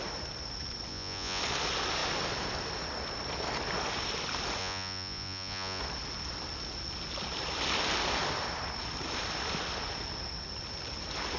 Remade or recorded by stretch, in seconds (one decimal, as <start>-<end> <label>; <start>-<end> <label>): 0.0-0.9 recorded; 0.9-1.4 remade; 1.4-4.6 recorded; 4.6-5.8 remade; 5.8-11.4 recorded